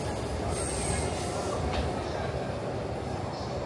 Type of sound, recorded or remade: recorded